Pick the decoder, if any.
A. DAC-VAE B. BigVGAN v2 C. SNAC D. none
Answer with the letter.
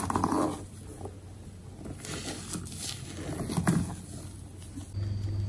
D